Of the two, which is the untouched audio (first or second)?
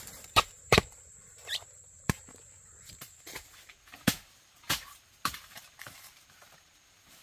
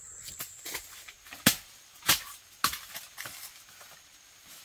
second